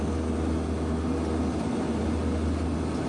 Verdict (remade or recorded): recorded